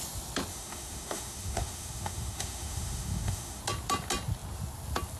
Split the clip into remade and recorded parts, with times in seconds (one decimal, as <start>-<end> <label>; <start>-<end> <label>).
0.0-0.5 recorded; 0.5-3.6 remade; 3.6-5.2 recorded